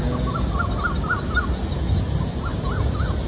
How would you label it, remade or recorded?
recorded